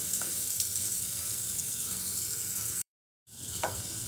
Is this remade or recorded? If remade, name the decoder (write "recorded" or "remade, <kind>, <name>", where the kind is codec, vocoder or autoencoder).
remade, codec, SNAC